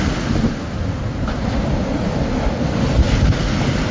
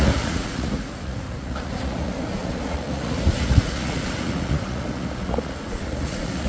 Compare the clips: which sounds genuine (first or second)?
first